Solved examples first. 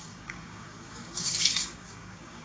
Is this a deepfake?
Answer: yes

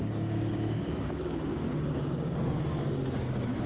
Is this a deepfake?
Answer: yes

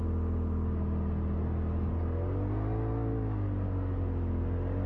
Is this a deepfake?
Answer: no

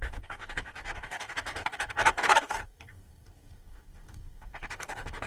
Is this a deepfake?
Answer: yes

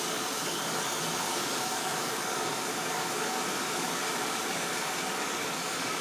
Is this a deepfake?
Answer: yes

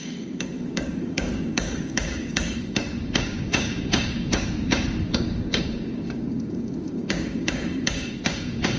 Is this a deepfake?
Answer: yes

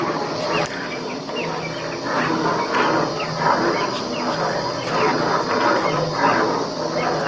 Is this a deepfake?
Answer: no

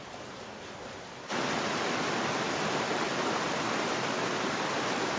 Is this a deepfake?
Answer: no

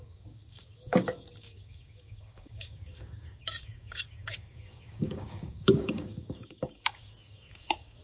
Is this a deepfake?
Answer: yes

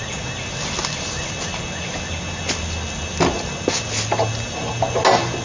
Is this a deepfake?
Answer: no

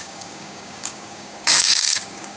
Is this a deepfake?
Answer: yes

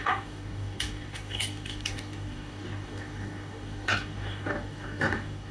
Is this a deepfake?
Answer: yes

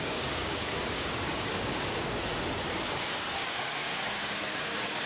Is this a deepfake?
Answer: yes